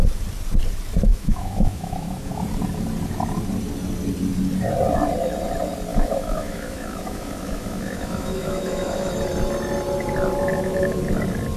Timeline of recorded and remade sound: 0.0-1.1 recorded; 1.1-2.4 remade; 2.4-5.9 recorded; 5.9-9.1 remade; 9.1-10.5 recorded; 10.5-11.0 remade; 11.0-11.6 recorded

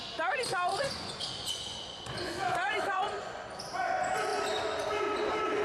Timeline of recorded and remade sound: 0.0-0.7 recorded; 0.7-3.4 remade; 3.4-5.6 recorded